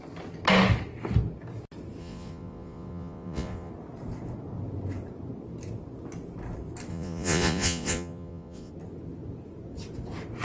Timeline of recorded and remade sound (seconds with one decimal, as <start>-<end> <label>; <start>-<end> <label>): 0.0-2.0 recorded; 2.0-3.7 remade; 3.7-6.9 recorded; 6.9-8.7 remade; 8.7-10.4 recorded